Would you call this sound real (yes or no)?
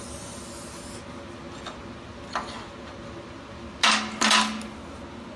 yes